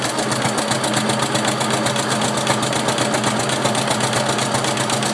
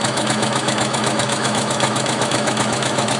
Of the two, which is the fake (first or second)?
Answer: second